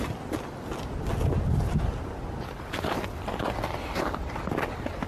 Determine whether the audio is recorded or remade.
recorded